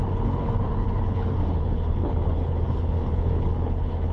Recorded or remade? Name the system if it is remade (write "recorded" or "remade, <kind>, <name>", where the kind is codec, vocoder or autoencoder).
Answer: remade, codec, HILCodec